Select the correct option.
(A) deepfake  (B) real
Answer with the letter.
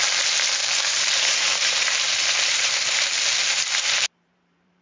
A